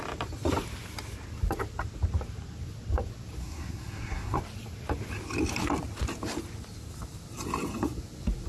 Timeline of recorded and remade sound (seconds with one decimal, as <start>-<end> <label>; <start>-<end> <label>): 0.0-3.4 recorded; 3.4-4.4 remade; 4.4-8.5 recorded